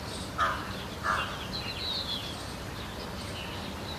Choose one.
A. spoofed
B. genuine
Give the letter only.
B